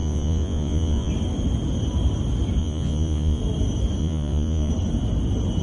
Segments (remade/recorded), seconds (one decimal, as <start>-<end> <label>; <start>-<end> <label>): 0.0-1.1 remade; 1.1-2.6 recorded; 2.6-3.4 remade; 3.4-4.0 recorded; 4.0-4.7 remade; 4.7-5.6 recorded